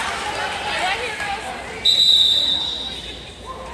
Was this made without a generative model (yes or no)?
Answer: yes